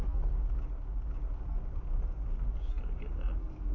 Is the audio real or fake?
real